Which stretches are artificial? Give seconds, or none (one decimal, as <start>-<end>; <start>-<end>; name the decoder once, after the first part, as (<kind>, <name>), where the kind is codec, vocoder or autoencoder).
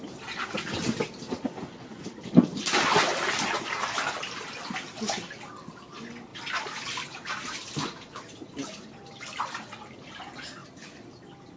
none